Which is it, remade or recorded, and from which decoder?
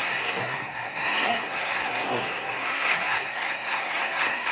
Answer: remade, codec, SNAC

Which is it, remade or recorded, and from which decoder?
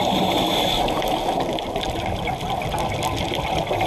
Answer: recorded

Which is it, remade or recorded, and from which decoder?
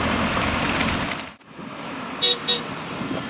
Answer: recorded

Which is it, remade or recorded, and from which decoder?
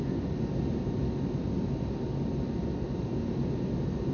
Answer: recorded